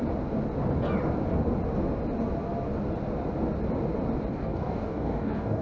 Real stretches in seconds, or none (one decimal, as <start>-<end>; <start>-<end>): 0.0-4.3